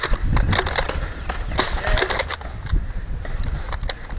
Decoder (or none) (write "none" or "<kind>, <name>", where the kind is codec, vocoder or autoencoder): none